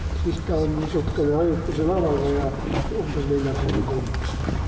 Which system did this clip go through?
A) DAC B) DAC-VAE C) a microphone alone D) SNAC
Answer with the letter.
C